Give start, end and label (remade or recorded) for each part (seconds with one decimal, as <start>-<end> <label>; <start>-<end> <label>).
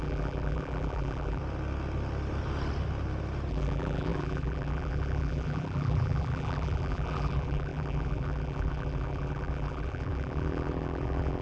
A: 0.0-1.4 remade; 1.4-3.5 recorded; 3.5-11.4 remade